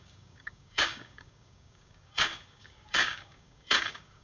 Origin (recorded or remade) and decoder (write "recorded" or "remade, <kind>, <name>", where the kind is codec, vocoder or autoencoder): remade, codec, DAC